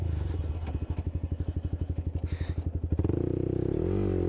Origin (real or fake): real